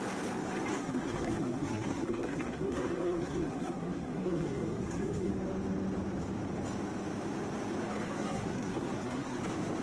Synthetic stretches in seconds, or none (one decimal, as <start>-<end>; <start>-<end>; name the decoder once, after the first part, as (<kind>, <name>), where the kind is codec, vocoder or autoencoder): 0.7-5.3 (codec, SNAC); 7.8-9.4